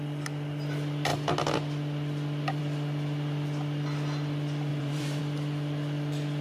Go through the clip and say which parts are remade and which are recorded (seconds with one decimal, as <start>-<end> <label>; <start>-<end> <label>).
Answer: 0.0-4.7 recorded; 4.7-5.2 remade; 5.2-6.4 recorded